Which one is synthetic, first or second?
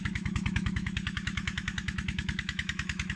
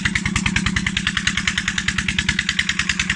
first